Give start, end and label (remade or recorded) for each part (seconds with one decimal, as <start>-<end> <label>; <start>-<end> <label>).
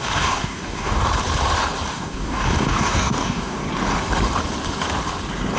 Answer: 0.0-1.0 remade; 1.0-1.9 recorded; 1.9-3.6 remade; 3.6-5.6 recorded